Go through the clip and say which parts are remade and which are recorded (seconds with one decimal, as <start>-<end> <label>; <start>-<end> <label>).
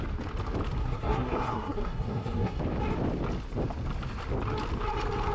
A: 0.0-0.8 recorded; 0.8-2.6 remade; 2.6-5.3 recorded